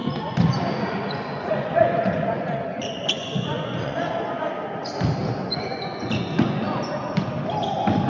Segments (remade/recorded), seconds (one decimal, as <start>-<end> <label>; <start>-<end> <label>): 0.0-4.2 remade; 4.2-5.4 recorded; 5.4-7.3 remade; 7.3-8.1 recorded